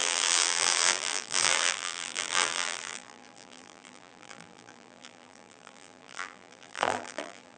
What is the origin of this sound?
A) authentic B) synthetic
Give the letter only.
B